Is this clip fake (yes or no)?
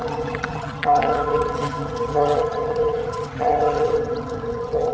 yes